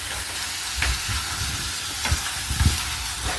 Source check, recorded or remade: recorded